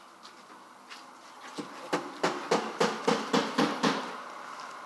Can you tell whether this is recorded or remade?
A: recorded